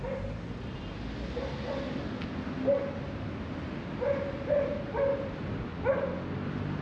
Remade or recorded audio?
recorded